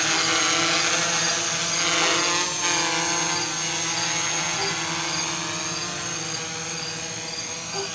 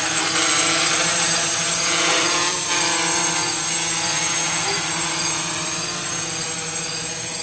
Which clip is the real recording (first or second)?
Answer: first